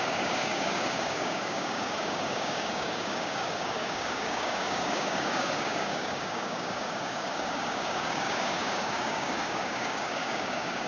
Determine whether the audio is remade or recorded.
remade